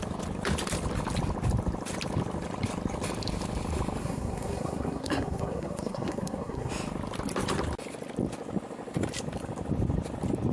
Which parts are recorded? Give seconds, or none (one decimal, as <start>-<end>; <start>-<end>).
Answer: 0.0-4.0; 6.7-10.5